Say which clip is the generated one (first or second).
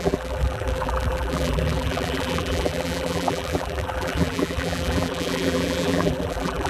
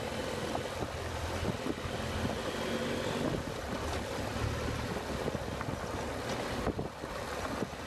first